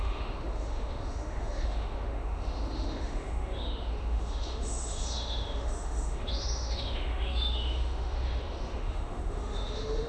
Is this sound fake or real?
fake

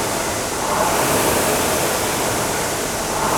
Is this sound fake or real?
real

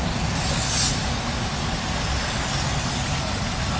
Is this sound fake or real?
real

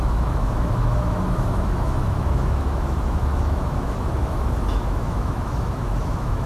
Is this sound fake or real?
fake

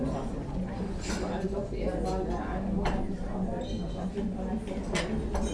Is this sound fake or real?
real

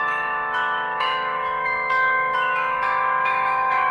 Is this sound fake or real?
fake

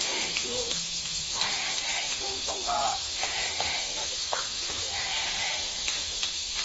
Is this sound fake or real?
fake